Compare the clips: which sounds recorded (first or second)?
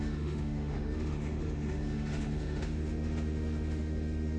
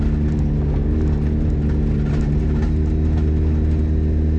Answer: second